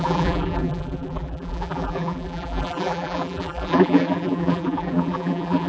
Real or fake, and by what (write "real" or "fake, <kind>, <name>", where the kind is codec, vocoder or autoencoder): fake, vocoder, BigVGAN v2